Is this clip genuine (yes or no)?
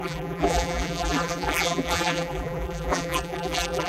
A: no